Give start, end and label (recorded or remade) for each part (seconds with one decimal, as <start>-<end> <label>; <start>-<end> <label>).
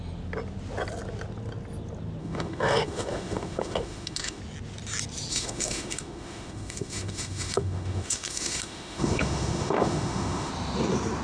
0.0-2.2 recorded; 2.2-4.4 remade; 4.4-5.3 recorded; 5.3-10.5 remade; 10.5-11.2 recorded